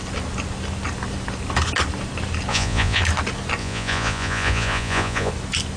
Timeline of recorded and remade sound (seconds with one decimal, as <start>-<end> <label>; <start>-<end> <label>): 0.0-2.5 recorded; 2.5-3.0 remade; 3.0-3.6 recorded; 3.6-5.3 remade; 5.3-5.8 recorded